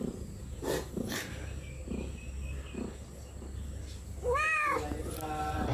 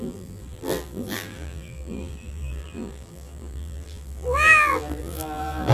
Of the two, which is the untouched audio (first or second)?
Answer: first